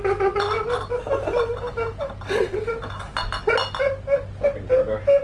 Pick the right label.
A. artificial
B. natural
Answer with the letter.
B